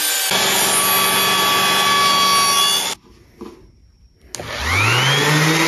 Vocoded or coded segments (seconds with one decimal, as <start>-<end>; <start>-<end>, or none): none